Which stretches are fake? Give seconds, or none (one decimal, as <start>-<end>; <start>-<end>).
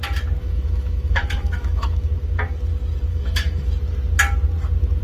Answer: 0.4-2.1; 3.1-3.7